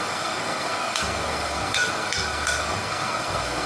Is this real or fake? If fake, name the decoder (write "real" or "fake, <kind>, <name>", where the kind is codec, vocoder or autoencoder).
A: fake, codec, SNAC